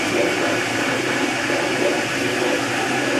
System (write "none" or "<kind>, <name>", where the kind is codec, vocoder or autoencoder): none